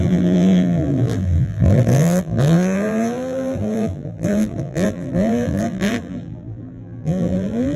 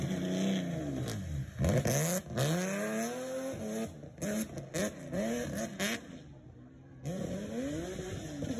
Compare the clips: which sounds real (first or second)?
second